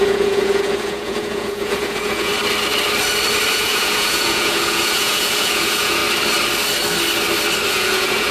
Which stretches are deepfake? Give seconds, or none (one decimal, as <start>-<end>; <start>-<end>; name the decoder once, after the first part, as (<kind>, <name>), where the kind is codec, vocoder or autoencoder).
0.0-2.3 (vocoder, Vocos); 3.5-6.0; 7.7-8.3